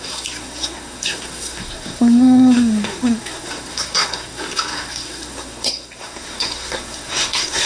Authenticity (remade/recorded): remade